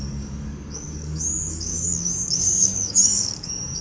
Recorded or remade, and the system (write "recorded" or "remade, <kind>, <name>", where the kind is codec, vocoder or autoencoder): remade, codec, DAC